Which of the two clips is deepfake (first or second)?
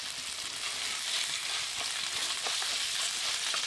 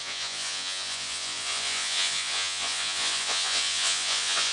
second